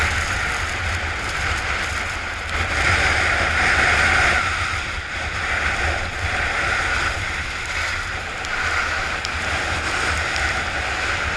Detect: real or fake real